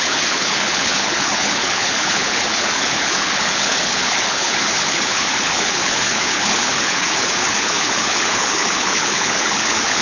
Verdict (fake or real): fake